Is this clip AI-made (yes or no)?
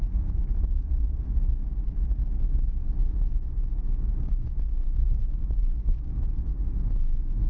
yes